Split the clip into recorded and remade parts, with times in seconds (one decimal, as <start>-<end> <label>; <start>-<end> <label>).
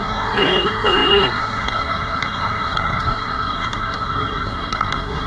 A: 0.0-5.3 remade